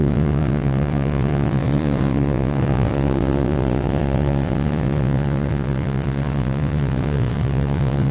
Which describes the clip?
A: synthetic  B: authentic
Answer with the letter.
A